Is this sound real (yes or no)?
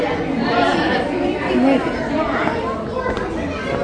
yes